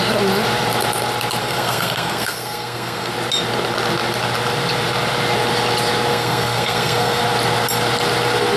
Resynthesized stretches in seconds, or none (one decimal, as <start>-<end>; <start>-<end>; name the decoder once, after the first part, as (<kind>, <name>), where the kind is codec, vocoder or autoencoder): 1.4-3.1 (codec, SNAC); 6.1-7.2